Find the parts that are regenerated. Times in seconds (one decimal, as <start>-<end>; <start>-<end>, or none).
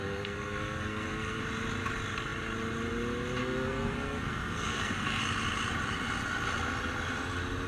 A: 0.0-1.4; 3.4-5.2